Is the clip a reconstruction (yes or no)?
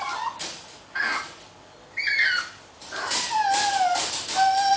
no